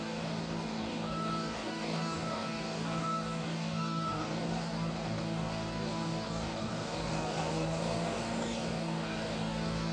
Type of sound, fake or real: fake